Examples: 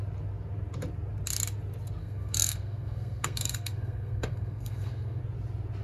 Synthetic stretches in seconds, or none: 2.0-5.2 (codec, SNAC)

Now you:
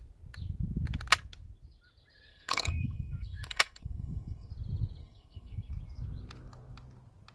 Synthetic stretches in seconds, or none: 2.3-4.5 (codec, SNAC); 5.0-5.7

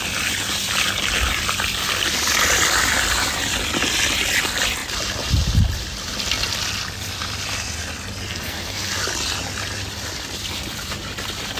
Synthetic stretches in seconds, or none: 8.3-8.9 (codec, SNAC)

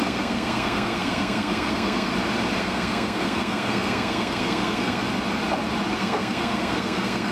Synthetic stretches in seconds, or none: 0.0-2.1 (codec, SNAC); 2.6-5.0; 5.9-7.3

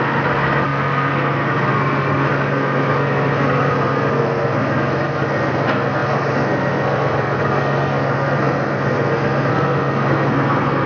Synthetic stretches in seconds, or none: 0.0-10.9 (codec, SNAC)